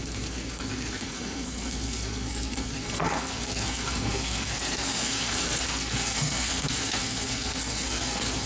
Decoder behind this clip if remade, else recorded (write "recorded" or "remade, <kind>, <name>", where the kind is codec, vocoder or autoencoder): remade, codec, SNAC